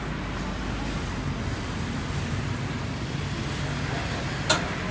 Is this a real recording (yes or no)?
yes